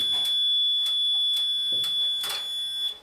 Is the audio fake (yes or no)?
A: no